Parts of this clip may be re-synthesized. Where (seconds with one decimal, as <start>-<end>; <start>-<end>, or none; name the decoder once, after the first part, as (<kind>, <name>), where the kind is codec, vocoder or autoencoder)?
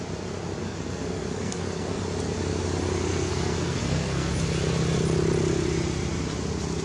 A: 0.6-2.0 (codec, SNAC); 3.1-4.3